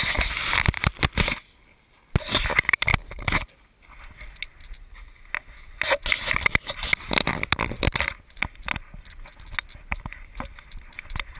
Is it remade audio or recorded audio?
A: recorded